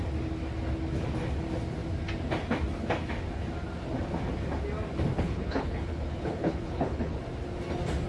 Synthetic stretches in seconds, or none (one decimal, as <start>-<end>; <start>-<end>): 5.1-7.2